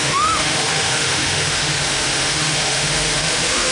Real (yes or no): no